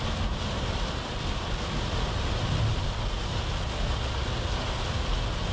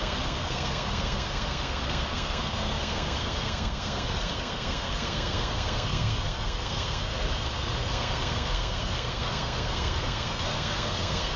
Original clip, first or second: first